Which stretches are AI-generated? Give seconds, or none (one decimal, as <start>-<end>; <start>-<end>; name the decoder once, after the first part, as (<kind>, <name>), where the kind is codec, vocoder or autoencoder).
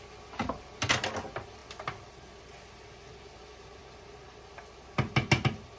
none